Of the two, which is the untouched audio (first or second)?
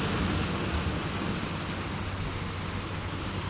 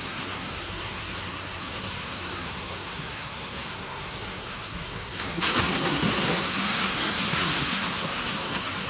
first